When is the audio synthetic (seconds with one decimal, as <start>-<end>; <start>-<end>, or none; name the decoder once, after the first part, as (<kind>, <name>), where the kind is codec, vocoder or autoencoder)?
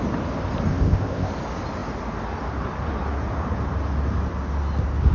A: 0.7-1.3 (codec, ZipCodec)